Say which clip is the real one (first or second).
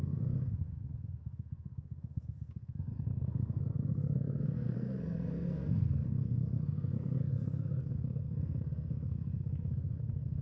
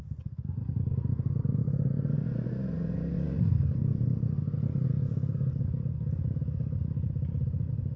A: second